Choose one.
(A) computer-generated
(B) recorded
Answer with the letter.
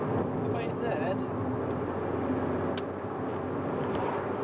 B